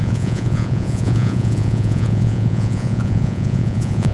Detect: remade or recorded remade